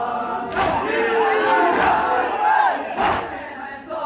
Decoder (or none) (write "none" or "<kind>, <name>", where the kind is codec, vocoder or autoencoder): none